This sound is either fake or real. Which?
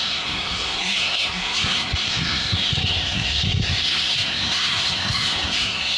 fake